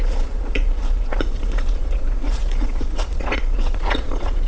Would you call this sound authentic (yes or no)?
no